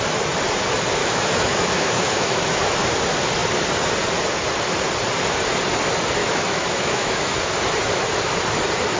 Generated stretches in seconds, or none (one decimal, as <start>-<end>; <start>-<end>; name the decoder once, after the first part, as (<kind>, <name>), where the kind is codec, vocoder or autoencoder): 1.0-2.9 (autoencoder, DAC-VAE); 6.2-7.5